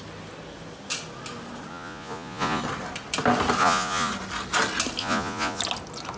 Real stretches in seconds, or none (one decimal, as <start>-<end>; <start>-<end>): 0.0-1.7; 2.6-3.6; 4.1-5.0; 5.6-6.2